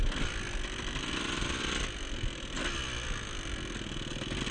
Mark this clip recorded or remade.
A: recorded